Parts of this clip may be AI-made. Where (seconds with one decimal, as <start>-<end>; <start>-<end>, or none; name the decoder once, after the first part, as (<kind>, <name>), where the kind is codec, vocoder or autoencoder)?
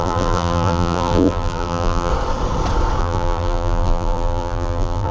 0.0-2.1 (vocoder, BigVGAN v2); 3.0-5.1